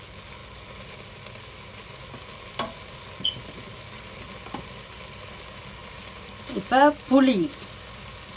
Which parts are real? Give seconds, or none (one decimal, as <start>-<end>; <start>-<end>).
0.0-5.8